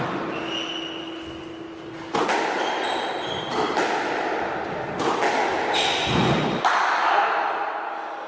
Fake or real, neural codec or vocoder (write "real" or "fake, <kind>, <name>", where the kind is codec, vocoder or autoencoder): real